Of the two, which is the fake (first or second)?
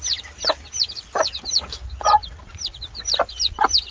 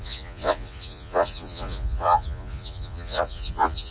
second